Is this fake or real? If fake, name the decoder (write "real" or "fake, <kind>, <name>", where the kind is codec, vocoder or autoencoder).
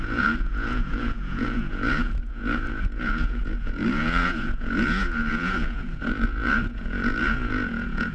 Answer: fake, vocoder, Vocos